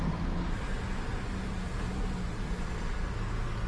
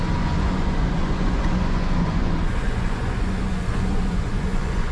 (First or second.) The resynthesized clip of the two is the second